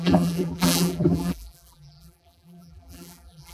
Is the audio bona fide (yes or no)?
no